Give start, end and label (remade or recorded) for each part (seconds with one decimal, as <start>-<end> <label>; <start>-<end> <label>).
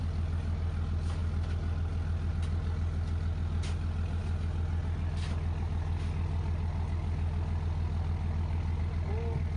0.0-9.6 recorded